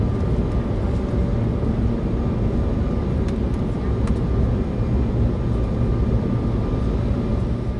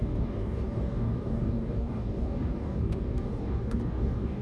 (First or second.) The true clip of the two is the first